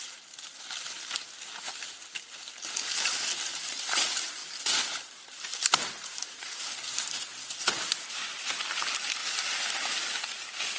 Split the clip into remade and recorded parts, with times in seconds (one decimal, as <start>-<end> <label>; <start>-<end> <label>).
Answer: 0.0-10.8 recorded